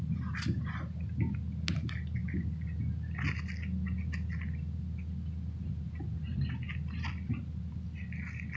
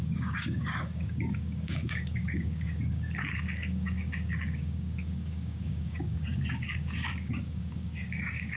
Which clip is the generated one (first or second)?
second